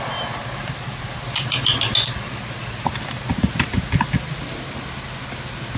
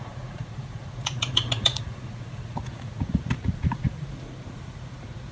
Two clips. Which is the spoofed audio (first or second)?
second